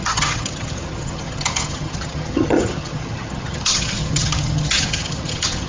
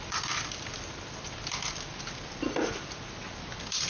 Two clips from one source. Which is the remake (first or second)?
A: first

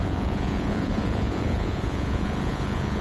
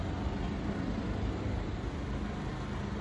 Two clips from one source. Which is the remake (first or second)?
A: first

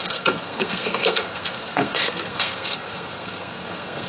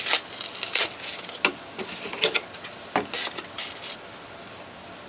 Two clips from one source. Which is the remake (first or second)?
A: first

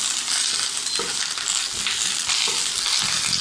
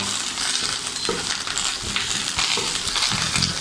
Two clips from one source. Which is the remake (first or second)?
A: second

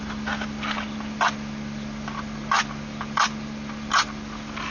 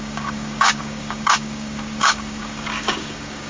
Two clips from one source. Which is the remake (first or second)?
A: second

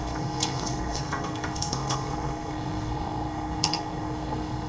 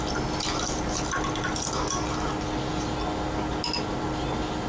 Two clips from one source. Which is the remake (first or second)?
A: first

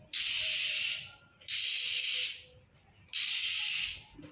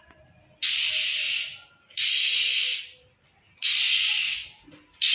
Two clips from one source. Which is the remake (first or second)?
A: first